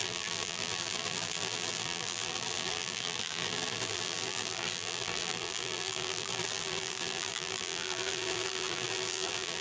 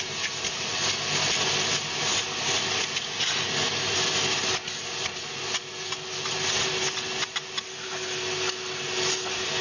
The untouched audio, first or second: second